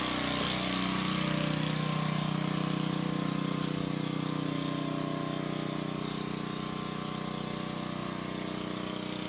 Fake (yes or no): no